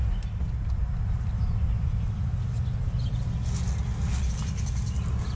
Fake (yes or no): no